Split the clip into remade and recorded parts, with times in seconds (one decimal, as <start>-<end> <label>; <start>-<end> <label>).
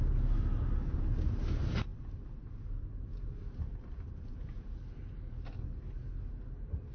0.0-6.9 recorded